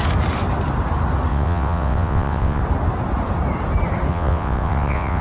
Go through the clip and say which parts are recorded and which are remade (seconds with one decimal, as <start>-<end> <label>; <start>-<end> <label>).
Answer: 0.0-1.3 recorded; 1.3-2.6 remade; 2.6-4.1 recorded; 4.1-5.2 remade